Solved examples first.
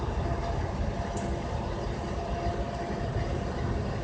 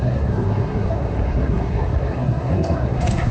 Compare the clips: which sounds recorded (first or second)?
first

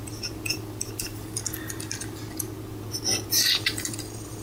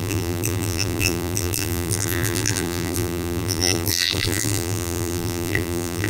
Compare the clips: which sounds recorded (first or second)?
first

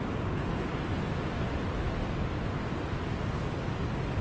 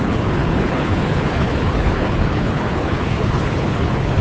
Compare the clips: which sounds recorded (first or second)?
first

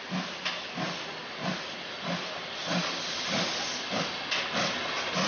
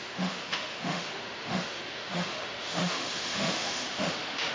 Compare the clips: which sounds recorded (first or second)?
first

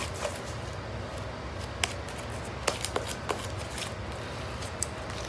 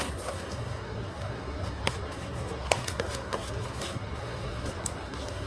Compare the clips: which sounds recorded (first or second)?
first